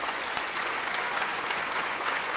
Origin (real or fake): fake